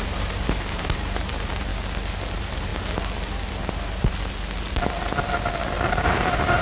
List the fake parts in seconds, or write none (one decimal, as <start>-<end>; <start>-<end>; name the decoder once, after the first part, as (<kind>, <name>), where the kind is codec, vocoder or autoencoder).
0.0-1.7 (vocoder, BigVGAN v2); 2.3-2.7; 5.9-6.6